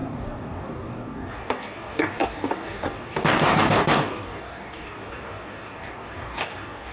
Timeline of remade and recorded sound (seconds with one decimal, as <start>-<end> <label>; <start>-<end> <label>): 0.0-6.9 remade

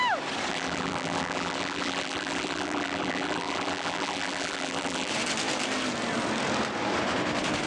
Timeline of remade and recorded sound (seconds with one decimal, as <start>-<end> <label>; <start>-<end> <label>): 0.0-0.5 recorded; 0.5-5.1 remade; 5.1-7.7 recorded

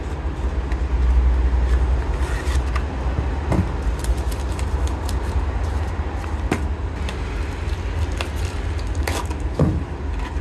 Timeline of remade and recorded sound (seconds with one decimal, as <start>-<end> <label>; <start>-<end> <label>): 0.0-10.4 recorded

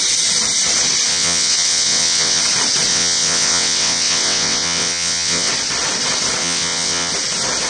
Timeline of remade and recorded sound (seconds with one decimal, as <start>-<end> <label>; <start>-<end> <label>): 0.0-1.1 recorded; 1.1-2.4 remade; 2.4-2.9 recorded; 2.9-5.5 remade; 5.5-6.4 recorded; 6.4-7.1 remade; 7.1-7.7 recorded

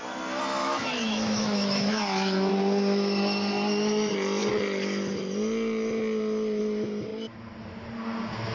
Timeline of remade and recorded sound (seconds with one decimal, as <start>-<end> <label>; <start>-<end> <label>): 0.0-0.6 recorded; 0.6-2.5 remade; 2.5-8.5 recorded

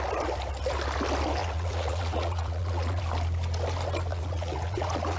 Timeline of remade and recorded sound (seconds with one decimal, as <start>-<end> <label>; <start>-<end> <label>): 0.0-1.4 recorded; 1.4-3.0 remade; 3.0-4.1 recorded; 4.1-5.2 remade